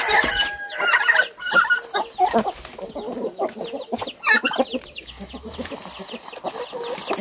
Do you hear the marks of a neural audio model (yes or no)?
no